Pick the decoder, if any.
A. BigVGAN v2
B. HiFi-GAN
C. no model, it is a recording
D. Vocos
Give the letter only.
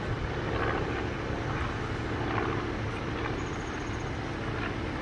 C